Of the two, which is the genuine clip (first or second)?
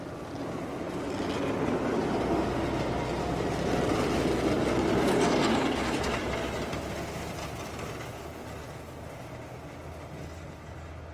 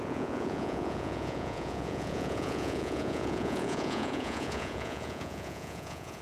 first